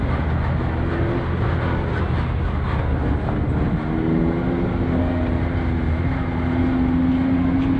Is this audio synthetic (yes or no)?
no